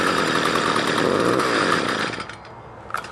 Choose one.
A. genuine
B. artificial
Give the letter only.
A